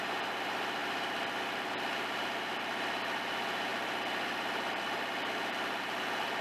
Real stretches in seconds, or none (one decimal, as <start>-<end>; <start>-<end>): 0.0-0.8; 1.7-3.7; 6.0-6.4